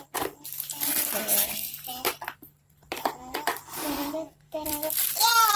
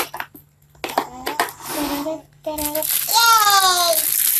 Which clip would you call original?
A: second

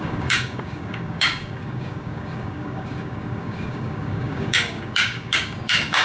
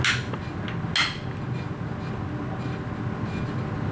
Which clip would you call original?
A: second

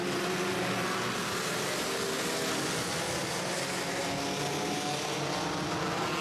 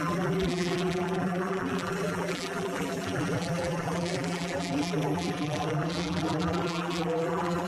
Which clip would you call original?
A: first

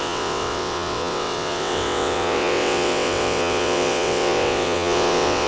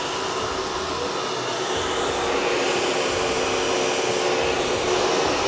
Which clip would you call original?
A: second